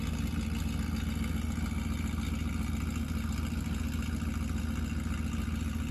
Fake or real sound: real